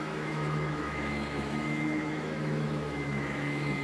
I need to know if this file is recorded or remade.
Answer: remade